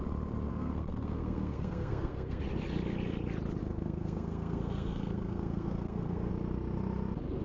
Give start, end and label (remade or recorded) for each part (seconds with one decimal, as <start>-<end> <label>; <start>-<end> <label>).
0.0-0.5 recorded; 0.5-2.4 remade; 2.4-3.6 recorded; 3.6-6.3 remade; 6.3-7.4 recorded